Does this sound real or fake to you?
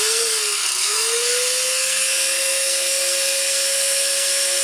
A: fake